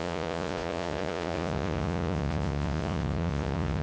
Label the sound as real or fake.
fake